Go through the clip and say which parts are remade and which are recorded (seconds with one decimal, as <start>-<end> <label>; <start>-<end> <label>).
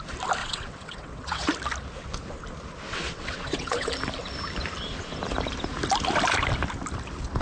0.0-0.4 recorded; 0.4-1.5 remade; 1.5-2.9 recorded; 2.9-3.9 remade; 3.9-7.4 recorded